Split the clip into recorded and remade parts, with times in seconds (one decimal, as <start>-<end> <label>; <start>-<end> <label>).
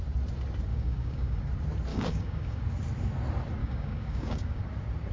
0.0-0.7 recorded; 0.7-1.4 remade; 1.4-1.9 recorded; 1.9-2.6 remade; 2.6-3.6 recorded; 3.6-4.6 remade; 4.6-5.1 recorded